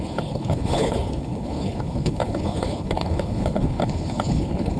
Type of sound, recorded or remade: remade